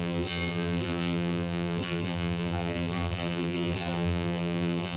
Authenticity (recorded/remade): remade